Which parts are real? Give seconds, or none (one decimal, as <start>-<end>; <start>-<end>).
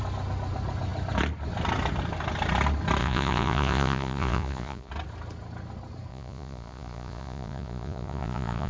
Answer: 0.0-3.0; 4.9-6.1